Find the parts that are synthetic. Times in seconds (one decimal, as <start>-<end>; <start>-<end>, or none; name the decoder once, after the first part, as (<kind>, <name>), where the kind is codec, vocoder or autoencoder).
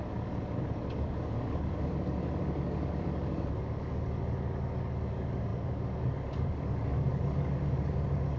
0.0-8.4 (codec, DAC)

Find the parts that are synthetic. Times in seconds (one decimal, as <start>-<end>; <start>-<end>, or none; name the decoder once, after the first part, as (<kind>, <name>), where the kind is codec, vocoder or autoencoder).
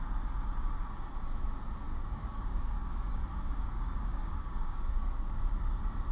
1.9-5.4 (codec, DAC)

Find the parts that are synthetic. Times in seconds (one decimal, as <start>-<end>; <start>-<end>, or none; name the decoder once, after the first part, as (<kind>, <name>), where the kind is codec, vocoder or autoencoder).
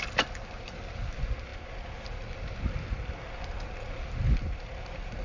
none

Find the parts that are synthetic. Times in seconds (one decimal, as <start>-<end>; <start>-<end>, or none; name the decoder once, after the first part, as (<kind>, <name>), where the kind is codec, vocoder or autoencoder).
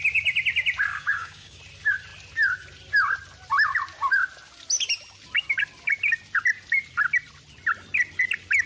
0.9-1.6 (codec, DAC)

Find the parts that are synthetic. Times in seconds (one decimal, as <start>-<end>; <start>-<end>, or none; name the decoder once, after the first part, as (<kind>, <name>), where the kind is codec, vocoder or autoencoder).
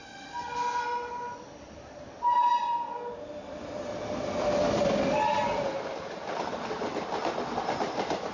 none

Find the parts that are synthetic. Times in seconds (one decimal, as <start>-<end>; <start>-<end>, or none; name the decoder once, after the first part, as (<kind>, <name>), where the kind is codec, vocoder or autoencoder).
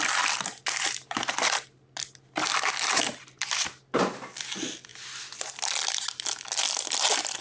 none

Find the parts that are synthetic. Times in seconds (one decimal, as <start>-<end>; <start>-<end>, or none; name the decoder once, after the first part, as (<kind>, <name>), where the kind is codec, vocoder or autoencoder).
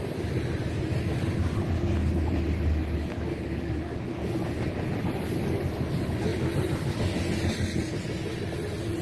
3.1-4.3 (codec, DAC)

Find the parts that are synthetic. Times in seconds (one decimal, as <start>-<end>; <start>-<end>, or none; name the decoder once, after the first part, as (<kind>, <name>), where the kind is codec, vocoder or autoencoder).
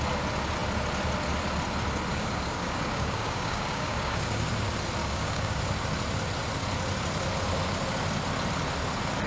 2.1-4.5 (codec, DAC); 5.0-5.6